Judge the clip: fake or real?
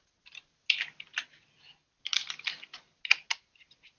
real